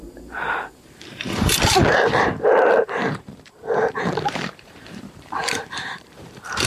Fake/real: fake